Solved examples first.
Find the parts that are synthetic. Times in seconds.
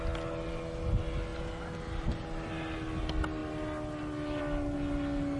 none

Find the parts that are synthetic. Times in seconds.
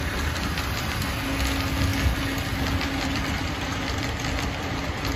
none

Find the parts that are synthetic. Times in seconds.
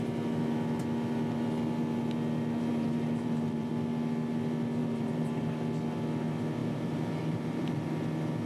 2.7-3.7 (vocoder, BigVGAN v2); 4.8-5.5; 6.6-8.0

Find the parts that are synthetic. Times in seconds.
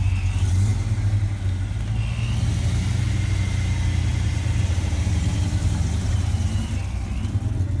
4.1-6.6 (vocoder, BigVGAN v2)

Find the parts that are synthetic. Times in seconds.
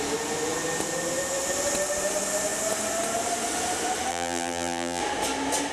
4.1-5.0 (vocoder, BigVGAN v2)